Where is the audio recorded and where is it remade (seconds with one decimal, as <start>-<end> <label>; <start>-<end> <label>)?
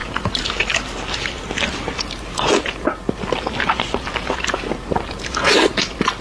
0.0-6.2 recorded